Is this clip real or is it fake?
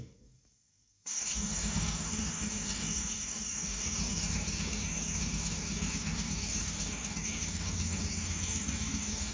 fake